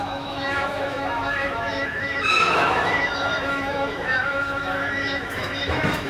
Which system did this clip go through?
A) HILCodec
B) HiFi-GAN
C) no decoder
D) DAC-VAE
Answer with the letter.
D